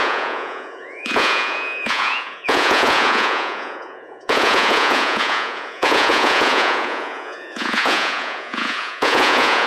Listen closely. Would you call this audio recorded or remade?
remade